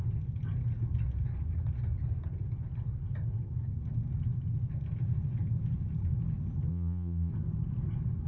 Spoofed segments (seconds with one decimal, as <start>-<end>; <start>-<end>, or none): 6.7-7.3

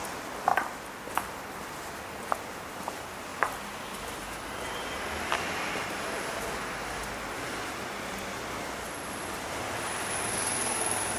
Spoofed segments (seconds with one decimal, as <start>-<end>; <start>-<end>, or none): none

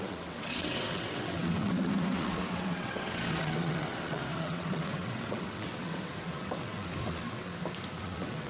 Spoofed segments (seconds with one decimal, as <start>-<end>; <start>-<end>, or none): 0.0-7.5; 8.0-8.5

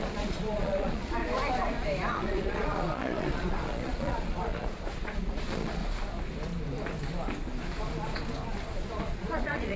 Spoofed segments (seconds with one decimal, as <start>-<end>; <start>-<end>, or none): 0.0-1.2; 2.1-5.8; 9.0-9.8

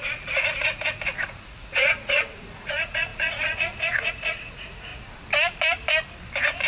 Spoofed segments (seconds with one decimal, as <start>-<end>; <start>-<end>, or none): 0.0-4.9

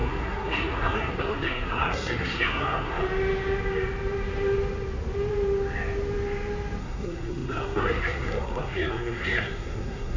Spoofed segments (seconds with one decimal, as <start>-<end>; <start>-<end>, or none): 0.0-3.0; 6.8-10.2

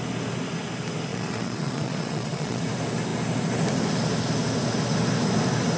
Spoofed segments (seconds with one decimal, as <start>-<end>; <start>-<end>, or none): 1.1-2.6

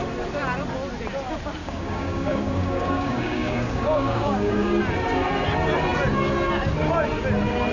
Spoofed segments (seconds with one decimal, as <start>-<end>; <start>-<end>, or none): 1.6-4.8